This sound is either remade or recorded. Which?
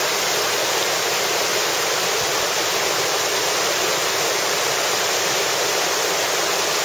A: recorded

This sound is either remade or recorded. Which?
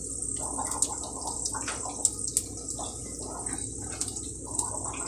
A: recorded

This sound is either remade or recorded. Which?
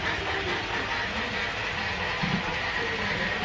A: recorded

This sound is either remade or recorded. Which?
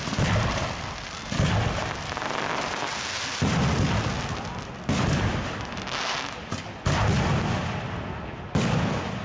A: recorded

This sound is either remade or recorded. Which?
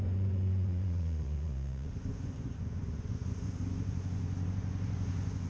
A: remade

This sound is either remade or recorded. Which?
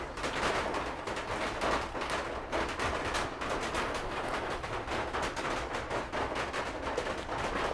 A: recorded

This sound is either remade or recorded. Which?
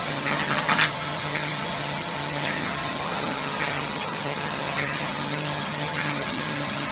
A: remade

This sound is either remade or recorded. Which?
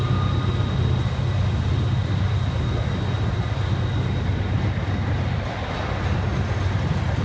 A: recorded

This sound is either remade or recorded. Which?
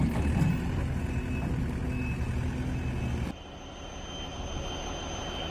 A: recorded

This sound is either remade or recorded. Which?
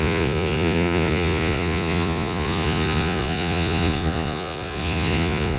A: remade